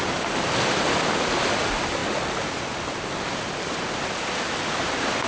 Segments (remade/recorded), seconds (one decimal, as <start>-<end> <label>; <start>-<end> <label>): 0.0-5.3 recorded